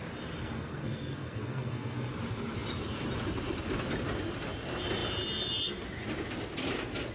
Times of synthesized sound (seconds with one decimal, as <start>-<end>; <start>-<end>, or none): 0.4-2.1